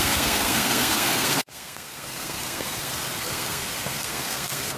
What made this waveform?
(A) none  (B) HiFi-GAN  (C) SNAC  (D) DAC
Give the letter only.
C